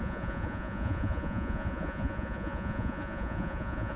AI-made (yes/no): yes